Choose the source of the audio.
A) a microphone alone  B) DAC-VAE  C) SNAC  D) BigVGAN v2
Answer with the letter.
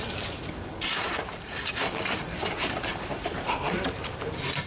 D